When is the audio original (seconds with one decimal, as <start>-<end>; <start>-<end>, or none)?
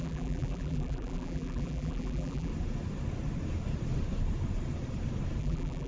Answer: 2.5-5.4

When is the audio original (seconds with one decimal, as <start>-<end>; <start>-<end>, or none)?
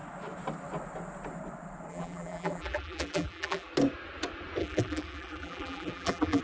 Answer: 0.0-1.9; 3.7-4.6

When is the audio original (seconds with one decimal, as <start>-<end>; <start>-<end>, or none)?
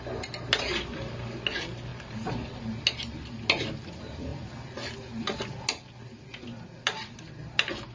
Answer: 0.0-7.9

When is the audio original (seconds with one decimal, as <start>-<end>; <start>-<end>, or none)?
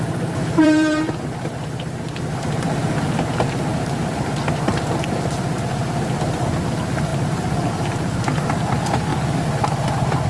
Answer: 3.7-4.5; 9.1-9.9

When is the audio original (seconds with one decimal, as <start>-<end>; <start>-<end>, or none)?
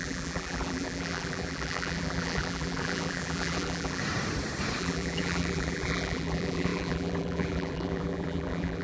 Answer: 4.0-4.8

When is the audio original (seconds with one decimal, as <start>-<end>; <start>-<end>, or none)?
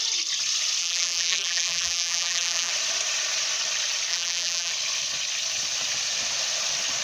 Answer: 0.0-0.8; 2.7-4.1; 4.7-7.0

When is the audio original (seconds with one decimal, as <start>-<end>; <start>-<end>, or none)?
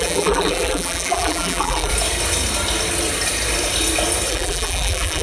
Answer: 1.9-4.3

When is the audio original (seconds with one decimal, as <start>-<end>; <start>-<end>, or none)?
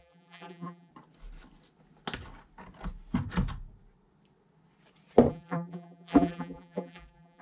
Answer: 0.9-5.3